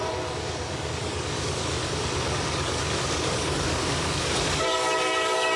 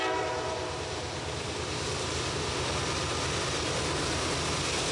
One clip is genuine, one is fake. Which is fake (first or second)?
first